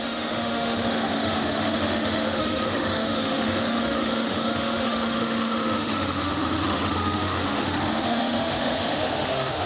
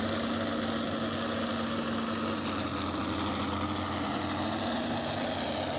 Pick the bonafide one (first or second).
second